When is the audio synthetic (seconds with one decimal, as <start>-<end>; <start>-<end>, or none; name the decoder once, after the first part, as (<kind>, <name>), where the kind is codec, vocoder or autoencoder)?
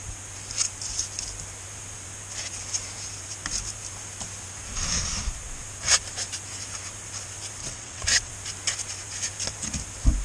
7.6-8.3 (vocoder, WaveNeXt)